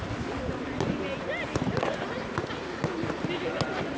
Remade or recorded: recorded